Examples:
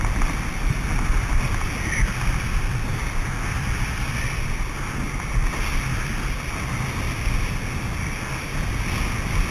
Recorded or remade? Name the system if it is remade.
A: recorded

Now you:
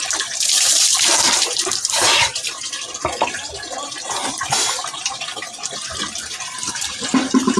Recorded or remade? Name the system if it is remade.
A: remade, vocoder, BigVGAN v2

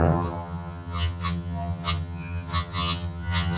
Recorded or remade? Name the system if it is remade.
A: remade, vocoder, HiFi-GAN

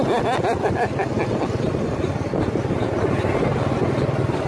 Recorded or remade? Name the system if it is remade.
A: recorded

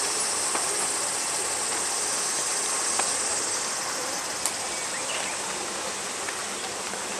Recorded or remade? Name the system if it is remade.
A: recorded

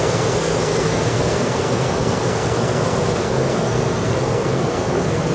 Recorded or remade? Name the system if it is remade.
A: remade, codec, SNAC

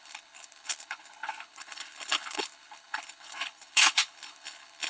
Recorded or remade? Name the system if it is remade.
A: remade, codec, HILCodec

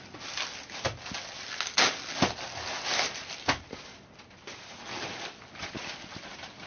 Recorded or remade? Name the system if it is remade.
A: recorded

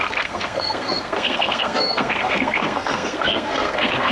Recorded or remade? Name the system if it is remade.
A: remade, codec, SNAC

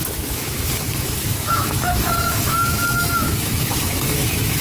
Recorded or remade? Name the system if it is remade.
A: remade, autoencoder, DAC-VAE